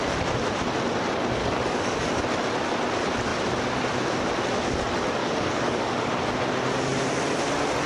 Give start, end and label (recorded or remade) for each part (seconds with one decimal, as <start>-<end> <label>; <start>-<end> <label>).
0.0-1.4 recorded; 1.4-2.2 remade; 2.2-5.2 recorded; 5.2-6.1 remade; 6.1-7.9 recorded